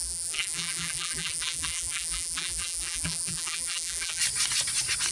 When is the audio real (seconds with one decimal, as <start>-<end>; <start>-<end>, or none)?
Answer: 4.2-5.1